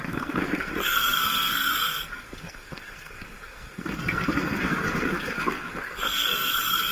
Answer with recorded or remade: remade